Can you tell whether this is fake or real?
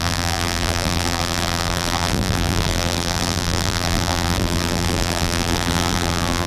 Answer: fake